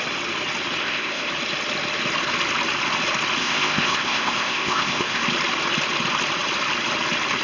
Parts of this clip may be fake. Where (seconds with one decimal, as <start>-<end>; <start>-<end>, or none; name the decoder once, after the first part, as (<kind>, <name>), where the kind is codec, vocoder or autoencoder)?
0.8-1.3 (codec, ZipCodec); 3.4-5.2